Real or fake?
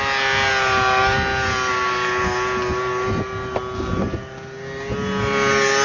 real